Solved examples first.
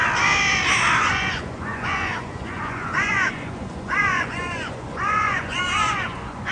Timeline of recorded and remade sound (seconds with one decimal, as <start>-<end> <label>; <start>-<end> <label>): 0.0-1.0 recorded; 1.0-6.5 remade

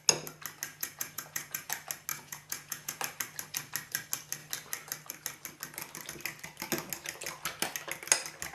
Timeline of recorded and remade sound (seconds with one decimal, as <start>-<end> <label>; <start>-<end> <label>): 0.0-0.7 recorded; 0.7-1.7 remade; 1.7-2.1 recorded; 2.1-3.0 remade; 3.0-8.5 recorded

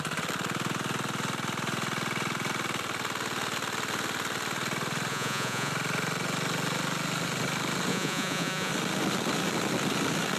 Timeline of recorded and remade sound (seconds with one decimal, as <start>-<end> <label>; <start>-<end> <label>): 0.0-5.1 recorded; 5.1-5.7 remade; 5.7-7.9 recorded; 7.9-8.7 remade; 8.7-10.4 recorded

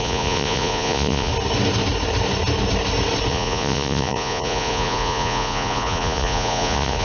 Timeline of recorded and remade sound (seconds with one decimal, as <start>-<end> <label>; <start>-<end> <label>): 0.0-1.3 remade; 1.3-3.3 recorded; 3.3-7.0 remade

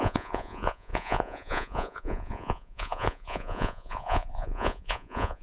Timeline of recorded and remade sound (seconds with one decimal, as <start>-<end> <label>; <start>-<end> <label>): 0.0-5.4 remade